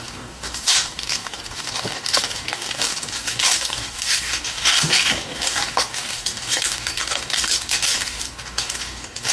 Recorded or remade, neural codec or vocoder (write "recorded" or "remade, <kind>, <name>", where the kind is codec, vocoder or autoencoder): remade, codec, DAC